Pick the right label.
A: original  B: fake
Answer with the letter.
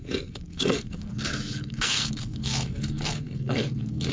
B